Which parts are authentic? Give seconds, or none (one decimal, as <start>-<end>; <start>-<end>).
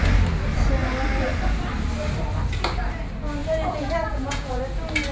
0.0-3.4; 4.6-5.1